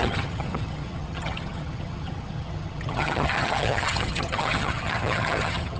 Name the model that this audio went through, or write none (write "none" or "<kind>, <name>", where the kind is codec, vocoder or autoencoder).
vocoder, HiFi-GAN